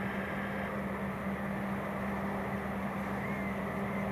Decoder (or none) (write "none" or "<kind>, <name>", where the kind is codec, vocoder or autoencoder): none